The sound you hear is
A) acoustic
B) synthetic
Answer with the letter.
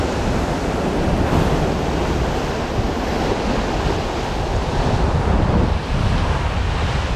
A